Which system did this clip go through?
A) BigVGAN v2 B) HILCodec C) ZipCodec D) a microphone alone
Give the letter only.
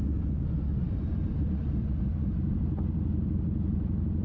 D